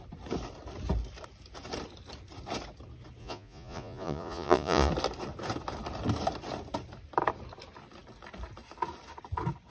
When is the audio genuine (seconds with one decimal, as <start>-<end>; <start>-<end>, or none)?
0.0-3.2; 4.9-9.7